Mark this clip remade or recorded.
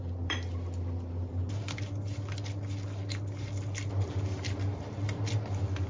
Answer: recorded